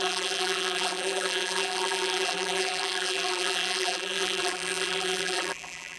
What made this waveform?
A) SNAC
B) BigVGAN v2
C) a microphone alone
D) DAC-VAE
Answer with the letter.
B